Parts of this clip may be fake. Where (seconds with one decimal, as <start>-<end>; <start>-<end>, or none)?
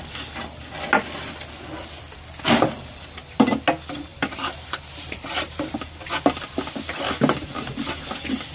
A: 4.1-5.7